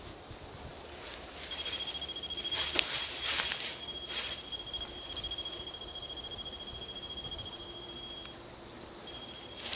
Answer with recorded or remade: recorded